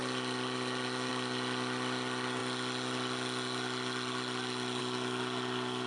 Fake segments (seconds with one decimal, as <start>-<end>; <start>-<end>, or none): none